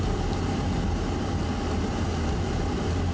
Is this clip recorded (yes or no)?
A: yes